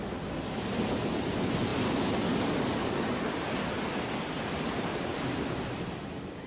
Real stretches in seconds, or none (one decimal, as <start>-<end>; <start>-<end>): 0.0-6.5